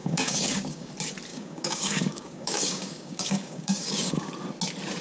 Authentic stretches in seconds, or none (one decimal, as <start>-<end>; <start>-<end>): 0.9-1.3; 4.3-5.0